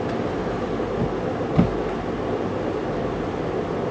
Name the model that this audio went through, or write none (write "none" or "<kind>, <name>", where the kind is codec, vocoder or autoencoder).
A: none